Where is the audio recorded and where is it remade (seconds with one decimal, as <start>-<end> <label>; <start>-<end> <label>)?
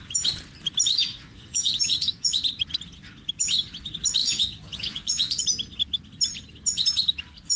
0.0-1.1 recorded; 1.1-2.4 remade; 2.4-4.2 recorded; 4.2-5.4 remade; 5.4-7.6 recorded